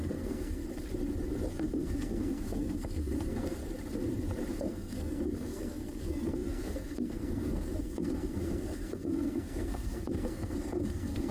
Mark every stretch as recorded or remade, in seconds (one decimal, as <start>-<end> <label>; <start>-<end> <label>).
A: 0.0-0.6 remade; 0.6-1.5 recorded; 1.5-3.6 remade; 3.6-4.5 recorded; 4.5-11.3 remade